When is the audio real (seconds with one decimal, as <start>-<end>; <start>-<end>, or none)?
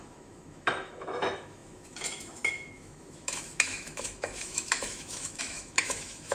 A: none